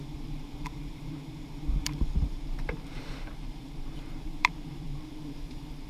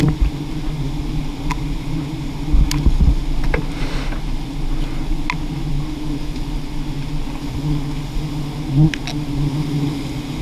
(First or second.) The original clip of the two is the second